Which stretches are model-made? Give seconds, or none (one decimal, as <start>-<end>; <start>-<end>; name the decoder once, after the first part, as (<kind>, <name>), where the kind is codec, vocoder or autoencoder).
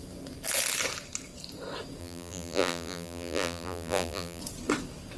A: 2.0-4.4 (vocoder, BigVGAN v2)